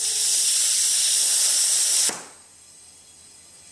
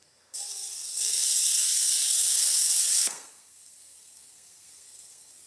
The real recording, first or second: first